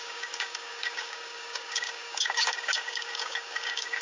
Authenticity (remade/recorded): remade